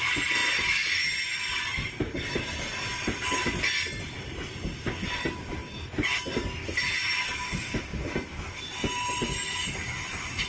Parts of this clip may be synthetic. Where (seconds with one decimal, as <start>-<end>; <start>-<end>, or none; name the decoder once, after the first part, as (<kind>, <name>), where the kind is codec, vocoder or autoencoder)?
none